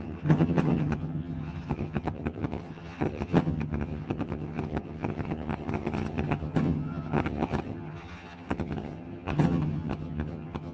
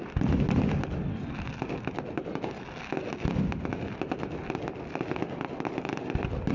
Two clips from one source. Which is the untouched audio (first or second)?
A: second